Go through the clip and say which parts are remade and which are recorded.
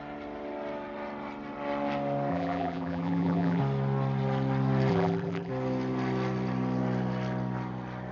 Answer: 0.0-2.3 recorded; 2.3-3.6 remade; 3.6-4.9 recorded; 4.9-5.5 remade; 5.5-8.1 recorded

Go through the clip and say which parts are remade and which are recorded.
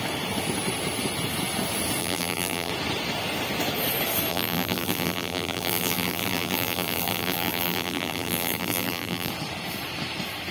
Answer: 0.0-2.0 recorded; 2.0-2.7 remade; 2.7-4.3 recorded; 4.3-9.3 remade; 9.3-10.5 recorded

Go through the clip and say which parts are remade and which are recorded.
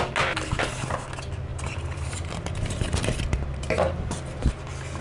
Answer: 0.0-1.5 recorded; 1.5-4.5 remade; 4.5-5.0 recorded